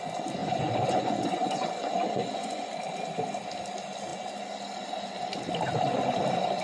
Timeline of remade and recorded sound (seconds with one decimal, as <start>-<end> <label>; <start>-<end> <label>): 0.0-0.4 recorded; 0.4-2.7 remade; 2.7-6.6 recorded